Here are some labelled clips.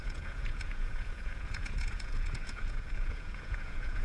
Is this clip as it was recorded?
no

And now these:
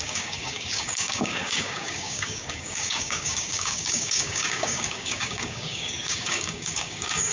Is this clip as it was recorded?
no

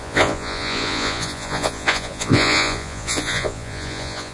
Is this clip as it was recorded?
no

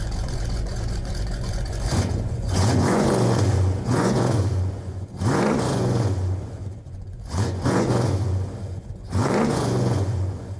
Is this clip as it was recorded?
no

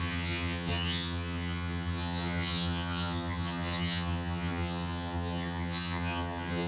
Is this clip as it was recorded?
no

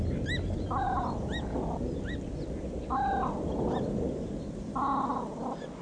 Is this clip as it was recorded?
yes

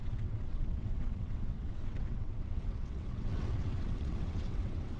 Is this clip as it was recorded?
no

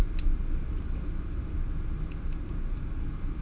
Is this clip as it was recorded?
yes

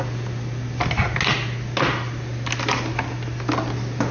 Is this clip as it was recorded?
yes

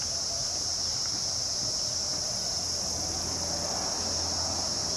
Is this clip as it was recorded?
yes